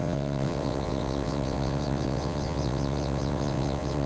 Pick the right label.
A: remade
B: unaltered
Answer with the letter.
A